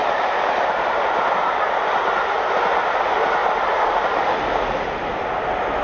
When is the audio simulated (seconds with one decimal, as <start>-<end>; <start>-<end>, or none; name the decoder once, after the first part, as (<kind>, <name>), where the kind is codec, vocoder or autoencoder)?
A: 0.0-1.3 (vocoder, BigVGAN v2); 3.4-3.9